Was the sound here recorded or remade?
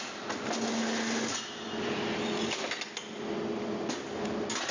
recorded